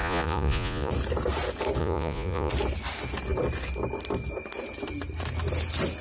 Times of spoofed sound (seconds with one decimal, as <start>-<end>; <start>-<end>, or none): 0.0-0.9; 1.8-2.5